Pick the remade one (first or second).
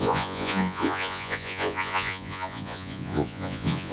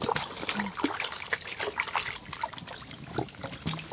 first